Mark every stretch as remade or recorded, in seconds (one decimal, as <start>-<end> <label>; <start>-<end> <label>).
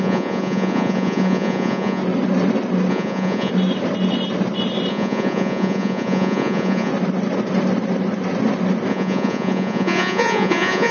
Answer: 0.0-2.0 remade; 2.0-2.9 recorded; 2.9-3.5 remade; 3.5-4.9 recorded; 4.9-6.9 remade; 6.9-8.9 recorded; 8.9-10.9 remade